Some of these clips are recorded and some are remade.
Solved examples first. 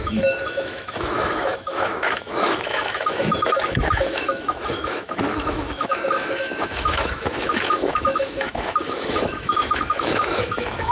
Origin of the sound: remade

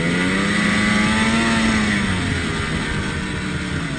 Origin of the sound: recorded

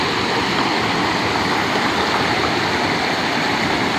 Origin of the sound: recorded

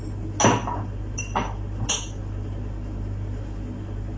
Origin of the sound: recorded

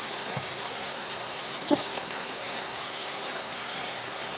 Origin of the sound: remade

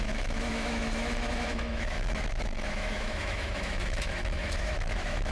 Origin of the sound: remade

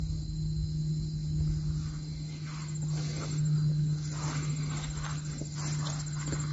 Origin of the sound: recorded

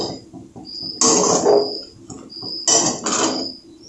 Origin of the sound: recorded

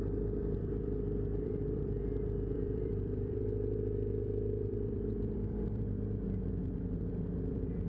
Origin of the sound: remade